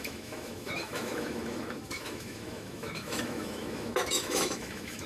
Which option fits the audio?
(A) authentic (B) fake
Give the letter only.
B